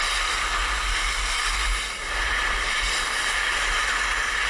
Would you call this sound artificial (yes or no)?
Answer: no